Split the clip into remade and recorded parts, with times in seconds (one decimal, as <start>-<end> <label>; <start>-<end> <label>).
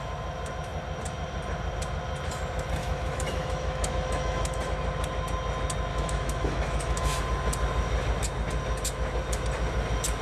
0.0-2.8 recorded; 2.8-4.6 remade; 4.6-5.9 recorded; 5.9-7.2 remade; 7.2-10.2 recorded